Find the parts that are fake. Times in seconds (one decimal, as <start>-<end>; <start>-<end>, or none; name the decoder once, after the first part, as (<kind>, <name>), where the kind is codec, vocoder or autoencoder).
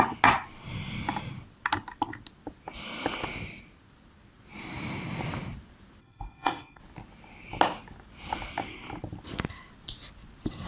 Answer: 6.0-6.8 (codec, SNAC)